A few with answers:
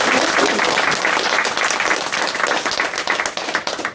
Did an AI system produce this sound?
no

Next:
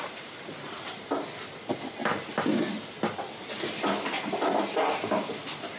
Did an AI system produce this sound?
no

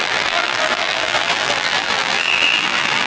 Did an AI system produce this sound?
yes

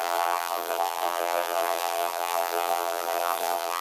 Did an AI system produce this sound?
yes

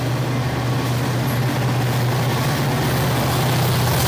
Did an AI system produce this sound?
no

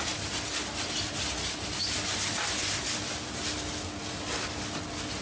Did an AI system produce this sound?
no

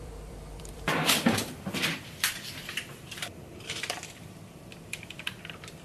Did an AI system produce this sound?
yes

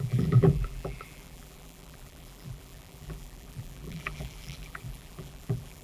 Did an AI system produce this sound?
yes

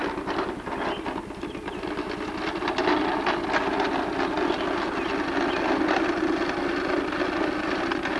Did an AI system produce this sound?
no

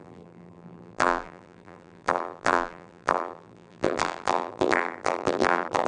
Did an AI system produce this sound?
yes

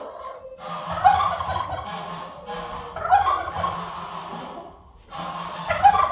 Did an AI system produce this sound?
no